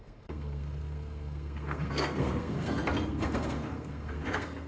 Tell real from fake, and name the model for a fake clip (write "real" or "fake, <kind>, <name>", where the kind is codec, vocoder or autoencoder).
fake, codec, SNAC